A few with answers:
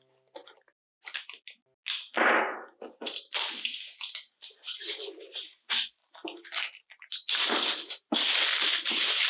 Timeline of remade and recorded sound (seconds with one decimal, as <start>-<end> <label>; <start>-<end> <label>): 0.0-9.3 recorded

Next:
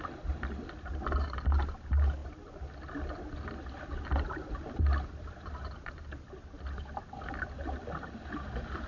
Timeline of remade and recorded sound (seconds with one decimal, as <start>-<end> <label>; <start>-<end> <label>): 0.0-8.9 recorded

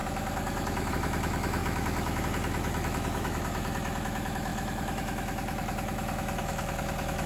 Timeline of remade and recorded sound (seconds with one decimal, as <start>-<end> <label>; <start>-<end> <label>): 0.0-7.3 remade

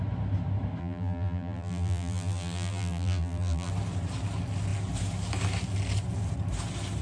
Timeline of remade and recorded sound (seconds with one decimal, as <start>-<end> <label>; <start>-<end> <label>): 0.0-0.8 recorded; 0.8-3.7 remade; 3.7-7.0 recorded

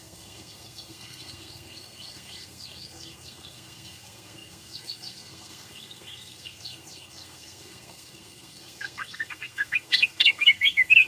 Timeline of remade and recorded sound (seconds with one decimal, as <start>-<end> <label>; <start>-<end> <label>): 0.0-11.1 remade

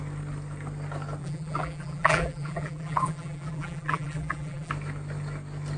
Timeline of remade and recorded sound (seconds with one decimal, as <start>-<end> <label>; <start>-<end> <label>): 0.0-1.2 recorded; 1.2-4.7 remade; 4.7-5.8 recorded